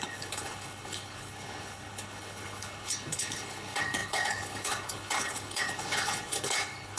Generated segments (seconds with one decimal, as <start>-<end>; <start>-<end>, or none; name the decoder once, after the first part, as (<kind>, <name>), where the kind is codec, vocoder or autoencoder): 0.0-7.0 (codec, HILCodec)